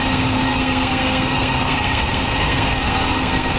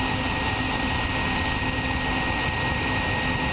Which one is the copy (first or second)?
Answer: first